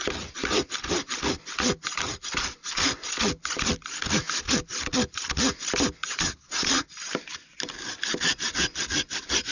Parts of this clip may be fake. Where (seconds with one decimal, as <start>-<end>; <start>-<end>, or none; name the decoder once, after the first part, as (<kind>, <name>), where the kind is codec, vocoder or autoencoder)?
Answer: 6.0-6.9 (vocoder, Vocos)